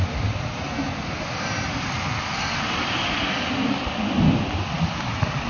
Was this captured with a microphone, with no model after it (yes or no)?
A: yes